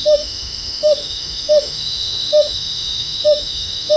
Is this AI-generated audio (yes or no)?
yes